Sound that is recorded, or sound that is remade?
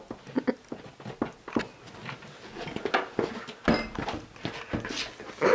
recorded